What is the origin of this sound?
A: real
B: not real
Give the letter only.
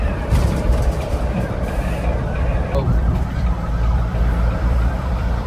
B